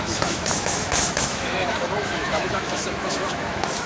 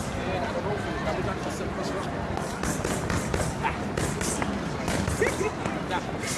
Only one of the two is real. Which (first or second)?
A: second